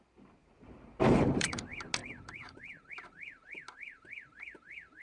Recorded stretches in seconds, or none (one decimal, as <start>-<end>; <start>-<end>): 0.0-0.4; 1.6-2.0; 2.9-5.0